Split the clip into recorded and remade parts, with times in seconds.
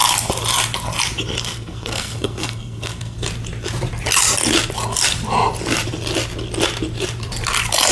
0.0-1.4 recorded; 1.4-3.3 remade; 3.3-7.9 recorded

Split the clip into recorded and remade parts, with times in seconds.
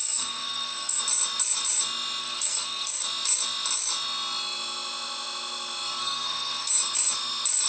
0.0-1.0 remade; 1.0-2.2 recorded; 2.2-3.0 remade; 3.0-6.0 recorded; 6.0-6.7 remade; 6.7-7.7 recorded